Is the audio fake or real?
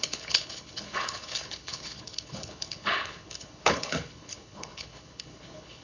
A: fake